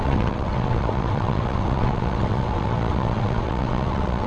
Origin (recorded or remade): remade